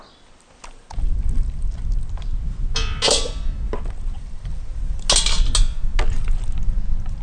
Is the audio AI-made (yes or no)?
no